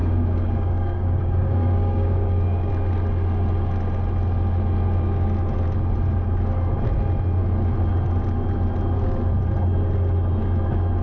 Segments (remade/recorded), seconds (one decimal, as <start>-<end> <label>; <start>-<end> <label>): 0.0-2.7 remade; 2.7-11.0 recorded